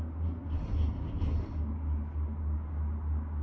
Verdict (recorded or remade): recorded